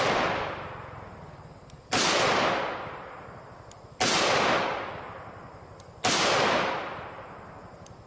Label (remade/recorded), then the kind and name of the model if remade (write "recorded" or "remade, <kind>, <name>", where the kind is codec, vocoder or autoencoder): recorded